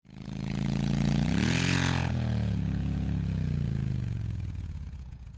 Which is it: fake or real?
fake